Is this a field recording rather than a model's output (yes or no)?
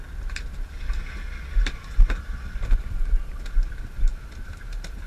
no